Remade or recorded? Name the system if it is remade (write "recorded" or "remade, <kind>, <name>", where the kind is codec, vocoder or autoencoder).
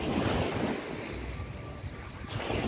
recorded